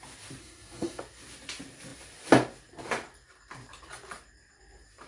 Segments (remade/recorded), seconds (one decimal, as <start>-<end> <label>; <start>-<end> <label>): 0.0-0.4 recorded; 0.4-1.0 remade; 1.0-5.1 recorded